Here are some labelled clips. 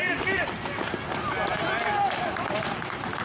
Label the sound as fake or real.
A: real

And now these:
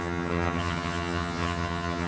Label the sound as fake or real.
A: fake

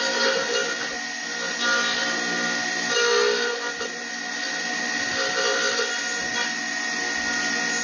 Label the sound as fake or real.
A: real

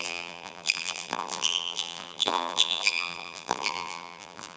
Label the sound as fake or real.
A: fake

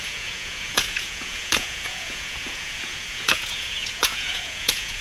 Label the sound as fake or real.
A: fake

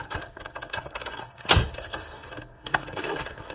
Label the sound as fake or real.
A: fake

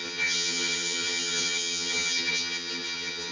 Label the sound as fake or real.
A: fake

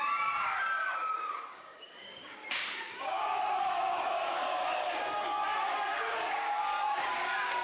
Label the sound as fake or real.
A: fake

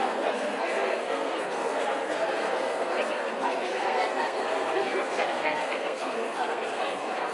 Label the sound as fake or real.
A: fake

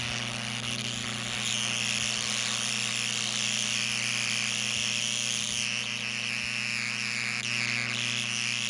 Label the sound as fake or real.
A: real